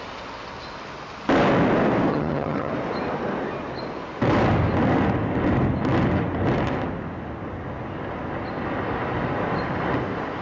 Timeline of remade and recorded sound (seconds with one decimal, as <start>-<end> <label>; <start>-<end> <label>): 0.0-2.1 recorded; 2.1-2.7 remade; 2.7-10.4 recorded